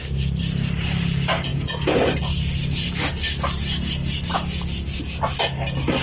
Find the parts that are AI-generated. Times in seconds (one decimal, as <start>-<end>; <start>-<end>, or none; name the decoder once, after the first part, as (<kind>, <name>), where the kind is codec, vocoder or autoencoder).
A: 1.5-2.2 (vocoder, Vocos)